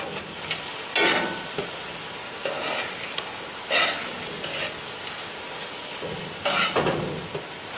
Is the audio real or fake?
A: real